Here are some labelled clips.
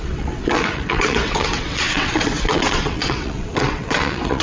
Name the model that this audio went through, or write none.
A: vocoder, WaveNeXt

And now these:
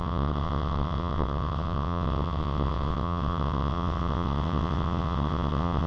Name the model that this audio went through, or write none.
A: vocoder, WaveNeXt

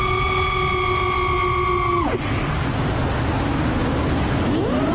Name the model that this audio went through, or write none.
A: none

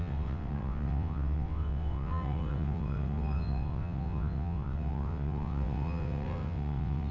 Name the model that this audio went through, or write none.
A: vocoder, WaveNeXt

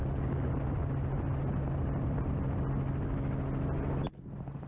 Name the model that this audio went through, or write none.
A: none